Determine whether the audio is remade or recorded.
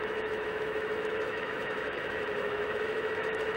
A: remade